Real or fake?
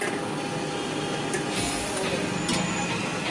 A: real